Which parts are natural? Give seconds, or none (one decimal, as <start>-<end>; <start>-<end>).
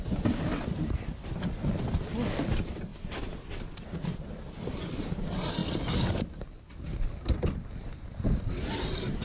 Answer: 0.0-9.2